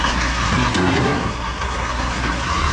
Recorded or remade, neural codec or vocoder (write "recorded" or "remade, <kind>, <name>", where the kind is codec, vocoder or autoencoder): remade, codec, SNAC